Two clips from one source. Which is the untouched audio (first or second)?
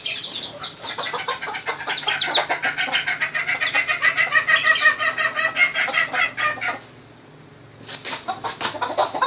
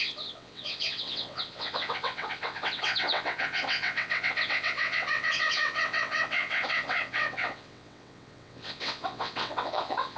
first